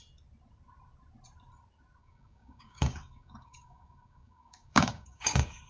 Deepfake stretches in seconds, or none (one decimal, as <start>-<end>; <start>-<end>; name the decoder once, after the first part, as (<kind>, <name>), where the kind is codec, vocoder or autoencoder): 2.0-5.7 (codec, DAC)